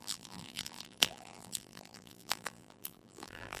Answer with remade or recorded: remade